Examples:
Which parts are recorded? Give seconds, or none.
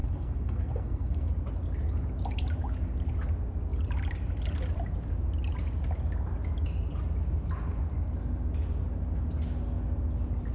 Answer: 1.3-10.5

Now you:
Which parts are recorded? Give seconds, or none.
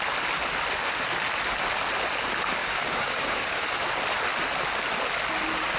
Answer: 0.0-2.6; 3.9-5.8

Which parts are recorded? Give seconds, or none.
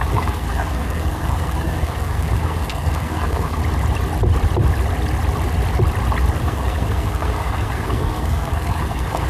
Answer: 3.6-6.4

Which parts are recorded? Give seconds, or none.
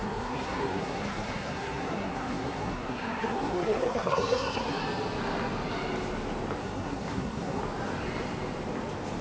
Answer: 4.8-6.6; 7.6-9.2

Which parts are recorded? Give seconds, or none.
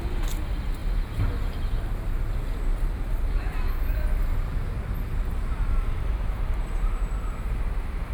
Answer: 0.0-5.3; 7.5-8.1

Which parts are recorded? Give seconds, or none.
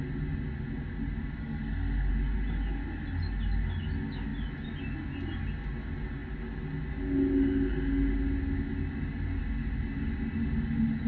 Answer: 0.0-1.4; 2.1-11.1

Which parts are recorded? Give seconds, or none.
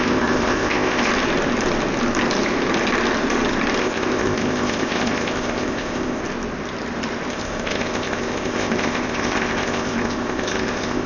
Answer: 1.1-3.8; 6.2-7.3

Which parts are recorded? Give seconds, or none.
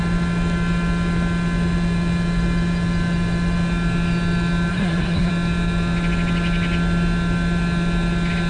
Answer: 0.0-4.7; 5.3-8.5